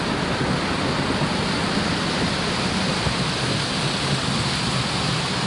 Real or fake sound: real